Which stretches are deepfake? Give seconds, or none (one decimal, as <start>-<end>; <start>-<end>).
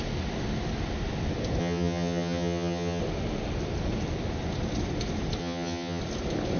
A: 1.6-3.0; 5.4-6.0